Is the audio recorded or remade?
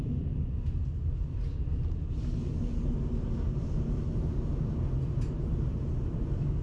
recorded